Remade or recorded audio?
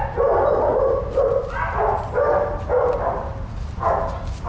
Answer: recorded